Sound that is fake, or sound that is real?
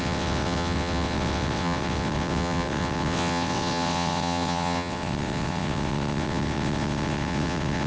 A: fake